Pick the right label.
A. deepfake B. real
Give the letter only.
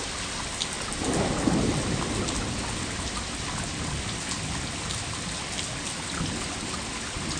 B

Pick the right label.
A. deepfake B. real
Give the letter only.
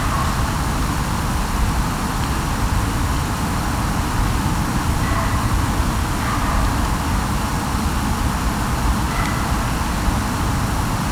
B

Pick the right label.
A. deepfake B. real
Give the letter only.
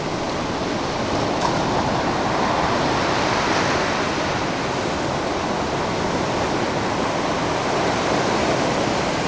B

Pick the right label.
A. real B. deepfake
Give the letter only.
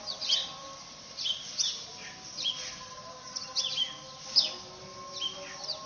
A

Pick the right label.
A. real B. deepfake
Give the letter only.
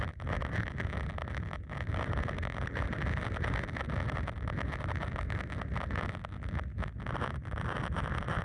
A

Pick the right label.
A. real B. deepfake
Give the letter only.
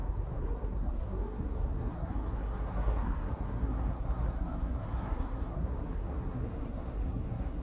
B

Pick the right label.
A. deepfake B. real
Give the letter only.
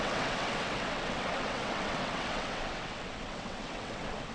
A